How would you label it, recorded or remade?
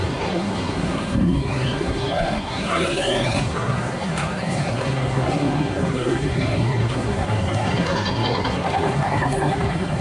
remade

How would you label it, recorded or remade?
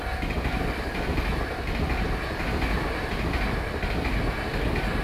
recorded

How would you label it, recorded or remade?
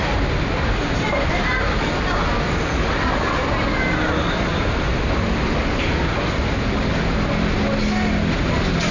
recorded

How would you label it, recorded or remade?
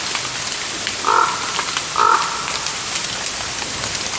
recorded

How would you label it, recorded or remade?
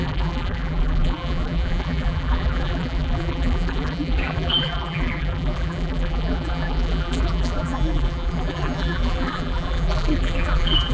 remade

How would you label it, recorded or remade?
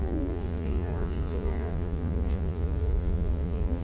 remade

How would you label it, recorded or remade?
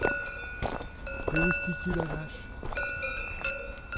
recorded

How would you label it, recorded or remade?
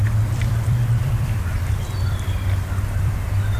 remade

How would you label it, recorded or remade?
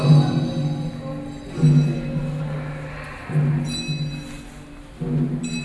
recorded